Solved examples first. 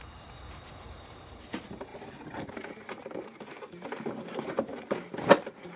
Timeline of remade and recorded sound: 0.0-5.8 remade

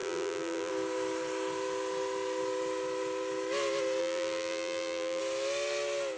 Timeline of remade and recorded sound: 0.0-0.7 remade; 0.7-4.0 recorded; 4.0-5.2 remade; 5.2-6.2 recorded

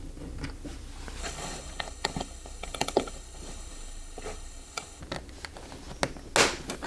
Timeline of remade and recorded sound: 0.0-1.2 recorded; 1.2-5.0 remade; 5.0-6.9 recorded

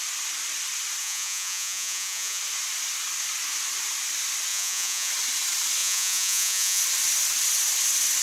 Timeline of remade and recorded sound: 0.0-1.0 recorded; 1.0-2.4 remade; 2.4-4.5 recorded; 4.5-5.1 remade; 5.1-5.8 recorded; 5.8-6.8 remade; 6.8-8.2 recorded

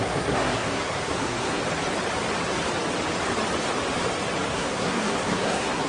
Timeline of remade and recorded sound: 0.0-1.6 remade; 1.6-4.5 recorded; 4.5-5.9 remade

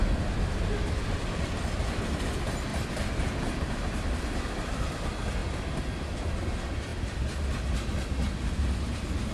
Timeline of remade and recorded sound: 0.0-2.7 recorded; 2.7-4.0 remade; 4.0-9.3 recorded